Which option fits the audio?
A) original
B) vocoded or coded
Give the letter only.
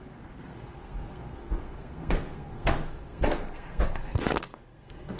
B